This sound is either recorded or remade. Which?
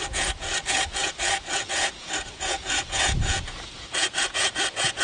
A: remade